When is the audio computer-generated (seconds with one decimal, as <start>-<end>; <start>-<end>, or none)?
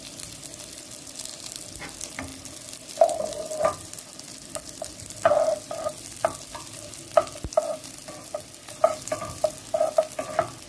none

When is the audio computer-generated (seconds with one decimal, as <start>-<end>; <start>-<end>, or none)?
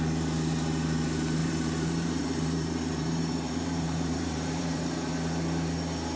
1.4-5.1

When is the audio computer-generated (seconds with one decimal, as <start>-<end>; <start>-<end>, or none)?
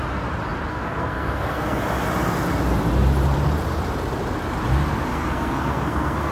0.7-1.8; 5.1-6.3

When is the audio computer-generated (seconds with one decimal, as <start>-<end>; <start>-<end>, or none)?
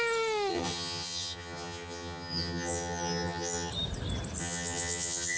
0.5-3.7; 4.4-5.4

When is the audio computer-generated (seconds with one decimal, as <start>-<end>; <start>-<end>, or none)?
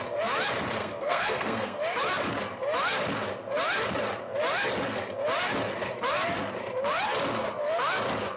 0.8-1.8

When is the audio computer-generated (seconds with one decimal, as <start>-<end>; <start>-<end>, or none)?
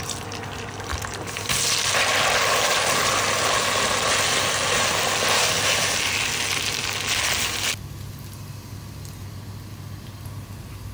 none